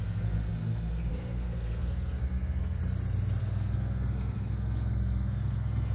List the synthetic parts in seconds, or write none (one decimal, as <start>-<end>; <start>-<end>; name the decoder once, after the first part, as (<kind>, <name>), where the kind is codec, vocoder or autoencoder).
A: 0.0-2.8 (codec, SNAC); 3.4-5.9

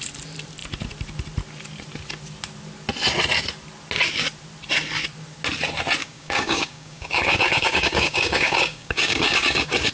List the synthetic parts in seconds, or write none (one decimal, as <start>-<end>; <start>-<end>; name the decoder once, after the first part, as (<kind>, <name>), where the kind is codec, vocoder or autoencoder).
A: 6.0-9.9 (codec, DAC)